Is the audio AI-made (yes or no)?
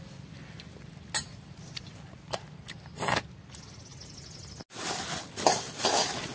no